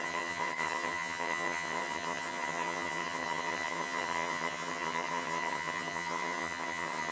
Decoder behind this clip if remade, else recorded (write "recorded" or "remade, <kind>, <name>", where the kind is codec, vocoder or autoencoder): remade, vocoder, HiFi-GAN